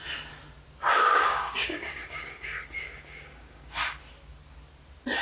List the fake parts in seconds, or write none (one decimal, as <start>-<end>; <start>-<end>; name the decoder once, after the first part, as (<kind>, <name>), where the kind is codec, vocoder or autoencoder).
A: 1.1-4.0 (codec, DAC)